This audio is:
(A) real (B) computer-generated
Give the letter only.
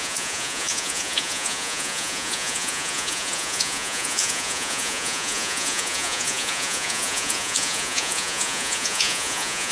B